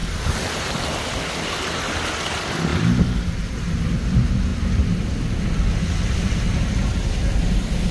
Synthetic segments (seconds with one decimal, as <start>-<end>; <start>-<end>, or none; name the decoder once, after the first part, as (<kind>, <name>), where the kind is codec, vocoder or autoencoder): none